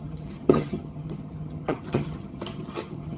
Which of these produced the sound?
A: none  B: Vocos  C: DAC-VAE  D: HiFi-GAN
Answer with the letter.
D